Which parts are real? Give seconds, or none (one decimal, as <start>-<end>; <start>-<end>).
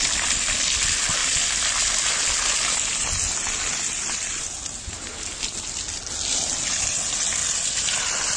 0.0-8.4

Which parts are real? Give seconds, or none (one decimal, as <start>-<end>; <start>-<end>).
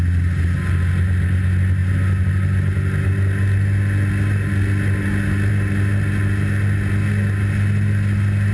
0.0-8.5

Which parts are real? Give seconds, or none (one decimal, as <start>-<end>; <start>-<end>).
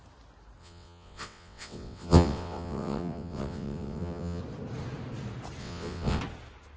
0.0-0.6; 4.4-5.6; 6.2-6.8